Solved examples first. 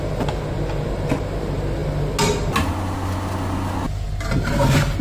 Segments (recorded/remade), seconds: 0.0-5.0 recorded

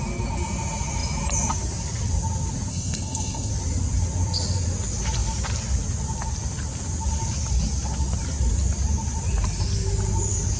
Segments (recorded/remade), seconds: 0.0-2.7 recorded; 2.7-3.5 remade; 3.5-10.6 recorded

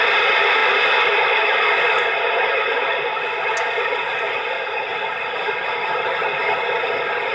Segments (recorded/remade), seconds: 0.0-7.3 recorded

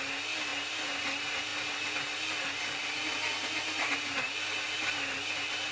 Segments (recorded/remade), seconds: 0.0-5.7 recorded

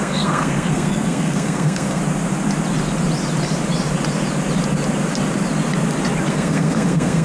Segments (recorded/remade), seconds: 0.0-2.0 remade; 2.0-6.3 recorded; 6.3-7.2 remade

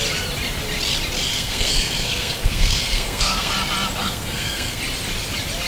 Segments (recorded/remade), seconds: 0.0-1.3 recorded; 1.3-3.5 remade; 3.5-4.0 recorded; 4.0-4.8 remade; 4.8-5.7 recorded